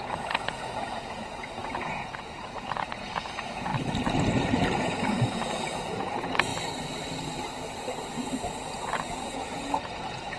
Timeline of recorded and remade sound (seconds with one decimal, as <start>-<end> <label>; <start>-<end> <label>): 0.0-3.7 remade; 3.7-4.8 recorded; 4.8-6.5 remade; 6.5-8.5 recorded; 8.5-10.4 remade